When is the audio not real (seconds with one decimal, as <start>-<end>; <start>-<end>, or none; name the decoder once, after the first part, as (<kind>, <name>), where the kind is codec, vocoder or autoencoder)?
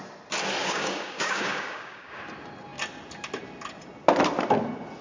0.6-2.2 (codec, DAC)